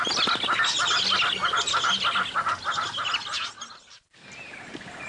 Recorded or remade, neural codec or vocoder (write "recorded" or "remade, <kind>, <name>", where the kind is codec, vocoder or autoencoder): recorded